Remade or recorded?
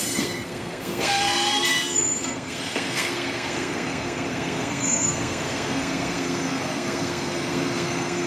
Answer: remade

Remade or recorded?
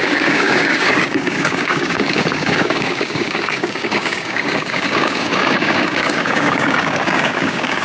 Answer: remade